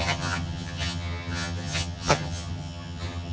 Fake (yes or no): yes